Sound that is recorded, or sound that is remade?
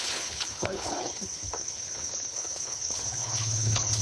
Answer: remade